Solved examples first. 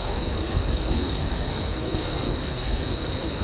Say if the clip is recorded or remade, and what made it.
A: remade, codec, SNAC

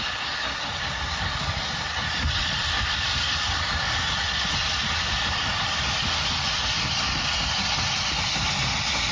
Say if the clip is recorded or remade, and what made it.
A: recorded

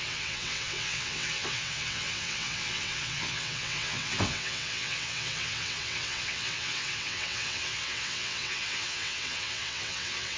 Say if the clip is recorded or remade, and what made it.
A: remade, vocoder, WaveNeXt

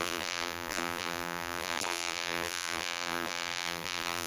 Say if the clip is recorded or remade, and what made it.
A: remade, vocoder, BigVGAN v2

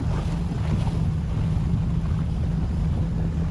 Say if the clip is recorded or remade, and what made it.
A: recorded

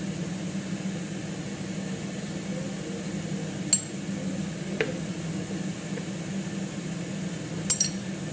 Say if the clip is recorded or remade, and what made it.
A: recorded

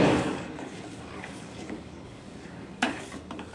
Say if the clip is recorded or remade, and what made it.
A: remade, codec, DAC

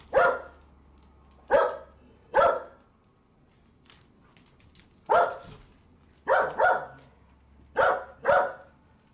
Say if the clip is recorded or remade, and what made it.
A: recorded